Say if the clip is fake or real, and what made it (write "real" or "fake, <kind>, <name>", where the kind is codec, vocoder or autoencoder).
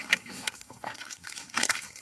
fake, codec, SNAC